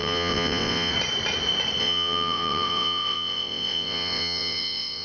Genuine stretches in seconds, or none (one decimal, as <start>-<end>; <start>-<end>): 0.9-1.8